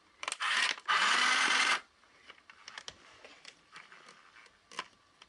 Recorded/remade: recorded